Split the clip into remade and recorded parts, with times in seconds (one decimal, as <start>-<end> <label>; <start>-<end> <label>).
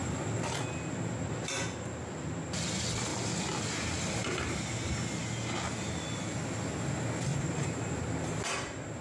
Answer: 0.0-7.3 recorded; 7.3-7.9 remade; 7.9-9.0 recorded